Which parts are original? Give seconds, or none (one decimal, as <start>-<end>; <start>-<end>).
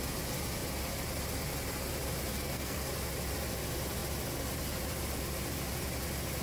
0.0-2.3; 2.9-6.4